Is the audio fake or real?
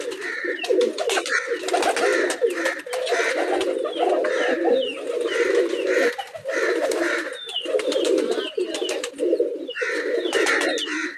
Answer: real